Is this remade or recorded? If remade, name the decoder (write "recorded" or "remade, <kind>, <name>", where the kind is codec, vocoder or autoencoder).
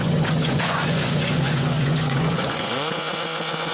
remade, vocoder, Vocos